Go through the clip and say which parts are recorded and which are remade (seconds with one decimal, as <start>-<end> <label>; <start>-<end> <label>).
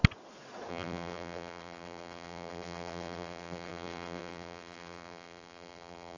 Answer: 0.0-0.7 recorded; 0.7-6.2 remade